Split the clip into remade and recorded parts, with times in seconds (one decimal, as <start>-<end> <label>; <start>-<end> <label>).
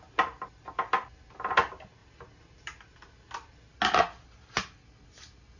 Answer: 0.0-5.6 recorded